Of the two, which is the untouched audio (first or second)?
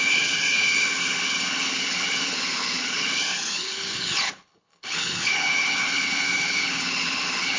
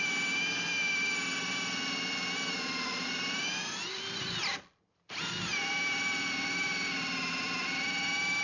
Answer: second